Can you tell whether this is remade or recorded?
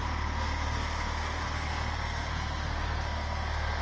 remade